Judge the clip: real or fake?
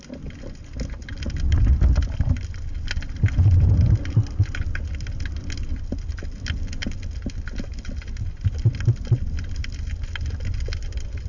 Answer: real